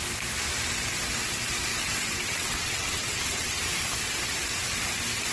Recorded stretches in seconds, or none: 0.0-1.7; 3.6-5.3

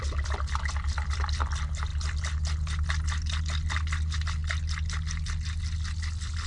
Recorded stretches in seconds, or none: 0.0-6.5

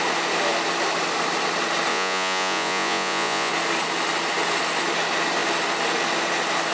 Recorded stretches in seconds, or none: 0.0-1.9; 3.5-6.7

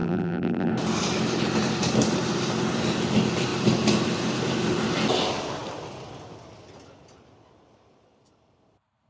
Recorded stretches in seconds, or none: 0.7-9.1

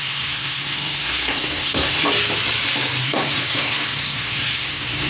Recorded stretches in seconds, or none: 2.0-3.0

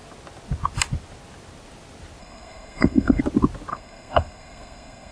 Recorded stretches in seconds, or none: 0.0-2.2; 3.2-3.7

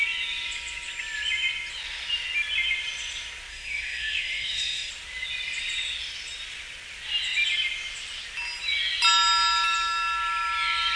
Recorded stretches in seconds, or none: 0.0-3.5; 4.9-11.0